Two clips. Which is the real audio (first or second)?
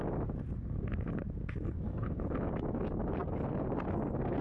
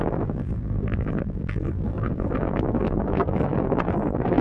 first